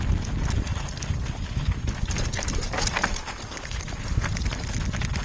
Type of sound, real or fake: real